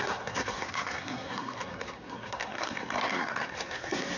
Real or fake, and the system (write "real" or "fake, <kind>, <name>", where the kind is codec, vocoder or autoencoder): fake, codec, SNAC